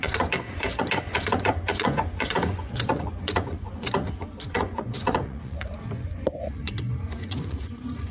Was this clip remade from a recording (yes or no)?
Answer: yes